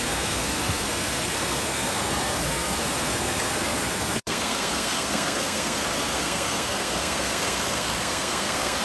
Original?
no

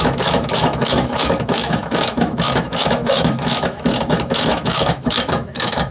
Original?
no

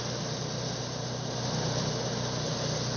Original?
yes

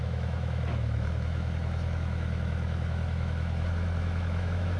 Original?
no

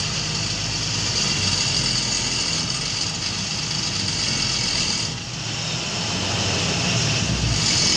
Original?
yes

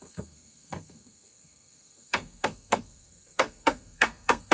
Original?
no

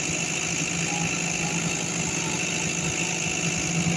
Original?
yes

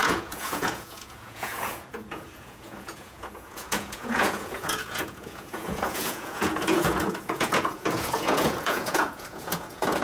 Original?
no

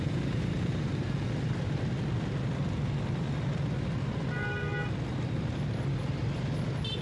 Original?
yes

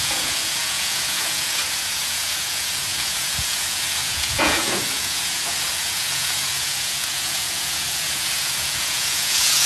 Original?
no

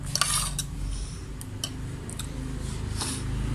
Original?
yes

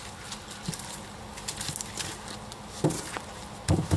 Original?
yes